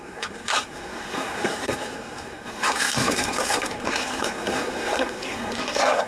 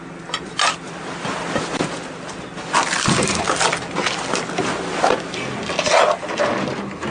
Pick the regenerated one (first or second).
first